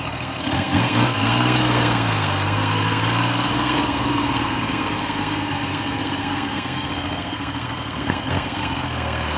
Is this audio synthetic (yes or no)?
yes